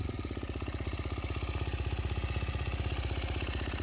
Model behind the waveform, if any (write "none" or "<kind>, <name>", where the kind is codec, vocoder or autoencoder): none